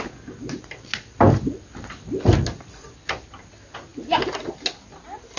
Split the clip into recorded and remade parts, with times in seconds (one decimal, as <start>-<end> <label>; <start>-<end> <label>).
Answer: 0.0-5.4 recorded